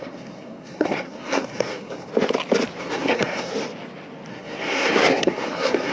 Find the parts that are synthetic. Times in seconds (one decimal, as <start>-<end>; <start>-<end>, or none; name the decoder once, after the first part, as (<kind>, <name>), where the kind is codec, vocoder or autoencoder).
0.0-2.1 (codec, SNAC); 2.8-3.5; 4.3-5.9